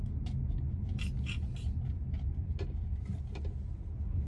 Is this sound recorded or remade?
recorded